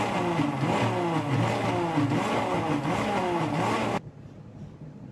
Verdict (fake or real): real